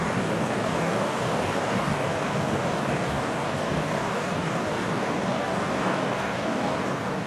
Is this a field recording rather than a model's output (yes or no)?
no